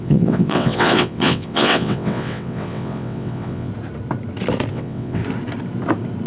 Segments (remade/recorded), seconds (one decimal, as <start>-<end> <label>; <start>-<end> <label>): 0.0-3.7 remade; 3.7-4.7 recorded; 4.7-5.2 remade; 5.2-6.3 recorded